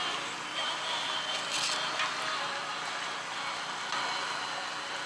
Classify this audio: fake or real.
real